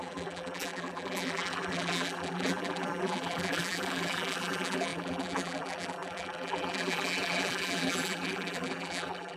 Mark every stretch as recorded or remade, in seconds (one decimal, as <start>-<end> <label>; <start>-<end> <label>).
0.0-9.4 remade